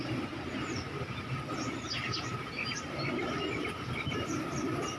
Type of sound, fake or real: real